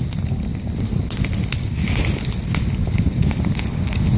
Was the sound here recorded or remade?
recorded